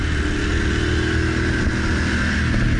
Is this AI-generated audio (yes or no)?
no